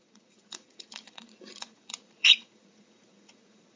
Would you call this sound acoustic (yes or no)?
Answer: no